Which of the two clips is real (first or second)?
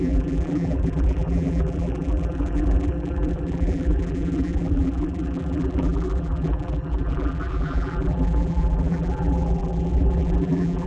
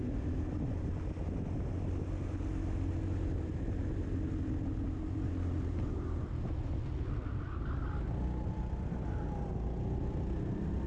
second